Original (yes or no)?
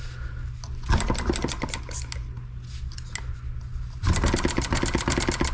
yes